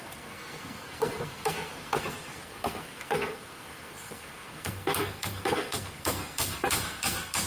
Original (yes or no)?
no